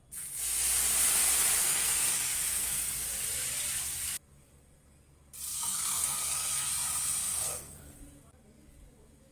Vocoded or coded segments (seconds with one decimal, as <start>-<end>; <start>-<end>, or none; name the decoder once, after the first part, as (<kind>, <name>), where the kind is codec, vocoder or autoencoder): 1.6-2.9 (codec, SNAC); 5.5-6.7; 7.2-8.0